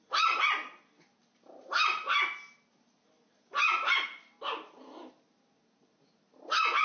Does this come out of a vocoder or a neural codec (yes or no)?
no